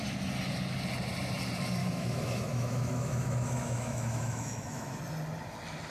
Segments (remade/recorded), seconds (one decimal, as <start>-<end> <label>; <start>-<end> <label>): 0.0-1.8 recorded; 1.8-5.0 remade; 5.0-5.9 recorded